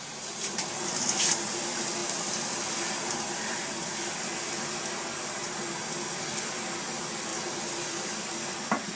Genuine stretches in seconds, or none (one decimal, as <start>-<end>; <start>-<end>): 0.0-9.0